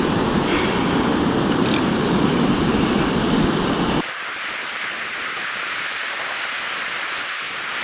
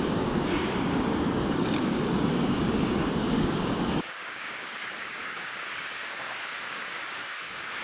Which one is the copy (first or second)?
second